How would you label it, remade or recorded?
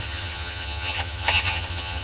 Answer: remade